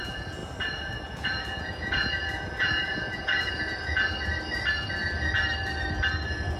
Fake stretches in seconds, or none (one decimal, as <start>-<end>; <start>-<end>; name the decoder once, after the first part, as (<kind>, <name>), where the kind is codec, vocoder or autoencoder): 0.0-0.4 (vocoder, Vocos); 1.1-4.3